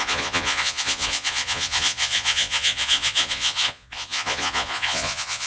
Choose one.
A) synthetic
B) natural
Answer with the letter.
A